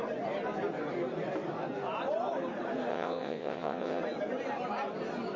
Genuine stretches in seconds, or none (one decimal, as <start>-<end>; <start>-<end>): 0.0-2.9; 4.0-5.4

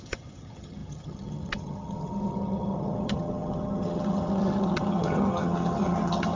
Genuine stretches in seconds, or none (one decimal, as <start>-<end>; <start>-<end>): none